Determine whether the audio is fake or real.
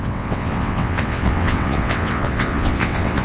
fake